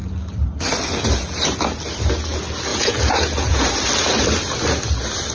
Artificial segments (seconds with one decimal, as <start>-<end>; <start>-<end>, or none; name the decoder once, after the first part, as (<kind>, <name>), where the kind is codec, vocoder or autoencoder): 2.7-3.7 (vocoder, Vocos)